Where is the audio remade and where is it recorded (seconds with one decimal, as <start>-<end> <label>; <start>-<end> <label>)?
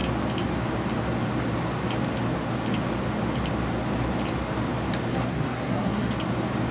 0.0-5.1 recorded; 5.1-6.1 remade; 6.1-6.7 recorded